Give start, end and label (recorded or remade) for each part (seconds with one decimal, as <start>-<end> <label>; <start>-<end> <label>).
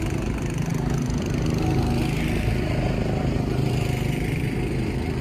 0.0-5.2 recorded